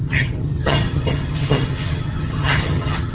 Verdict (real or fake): fake